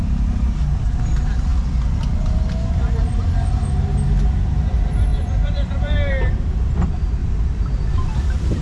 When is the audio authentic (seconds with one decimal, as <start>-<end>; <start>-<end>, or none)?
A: 0.0-5.1; 6.1-7.2